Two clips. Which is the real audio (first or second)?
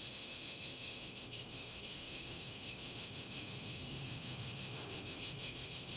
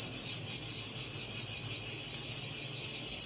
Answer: second